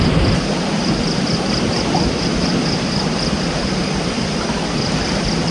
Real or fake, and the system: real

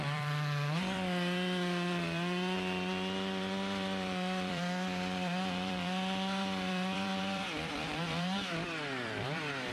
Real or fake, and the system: fake, vocoder, BigVGAN v2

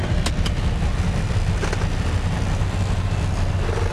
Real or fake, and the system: real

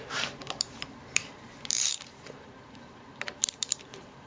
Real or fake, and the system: fake, vocoder, BigVGAN v2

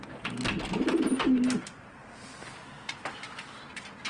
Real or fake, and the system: real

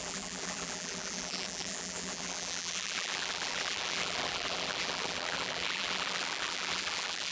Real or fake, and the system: fake, vocoder, BigVGAN v2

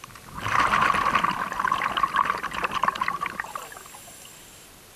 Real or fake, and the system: real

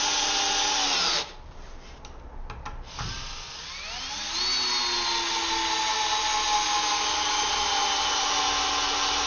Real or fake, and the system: real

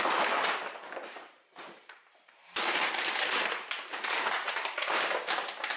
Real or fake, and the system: fake, vocoder, BigVGAN v2